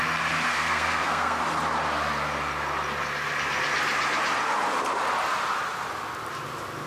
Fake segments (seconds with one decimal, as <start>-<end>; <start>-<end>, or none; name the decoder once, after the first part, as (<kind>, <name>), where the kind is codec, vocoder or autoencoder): 0.5-1.4 (codec, SNAC)